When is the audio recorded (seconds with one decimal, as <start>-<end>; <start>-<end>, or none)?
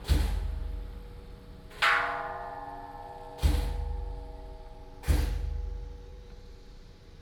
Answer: 0.0-6.1